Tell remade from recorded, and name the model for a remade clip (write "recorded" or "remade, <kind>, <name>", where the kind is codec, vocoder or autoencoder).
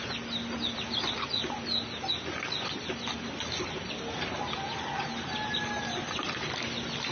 recorded